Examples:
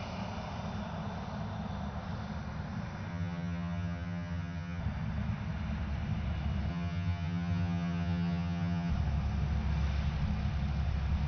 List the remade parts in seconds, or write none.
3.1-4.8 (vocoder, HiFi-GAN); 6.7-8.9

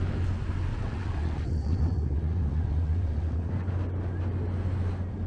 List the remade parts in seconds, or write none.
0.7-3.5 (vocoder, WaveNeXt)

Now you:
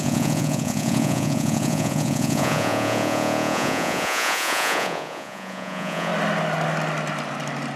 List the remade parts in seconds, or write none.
0.0-6.1 (vocoder, Vocos)